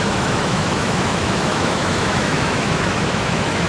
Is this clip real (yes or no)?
no